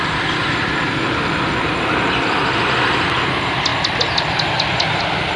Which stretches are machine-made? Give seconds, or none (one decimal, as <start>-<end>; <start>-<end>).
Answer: none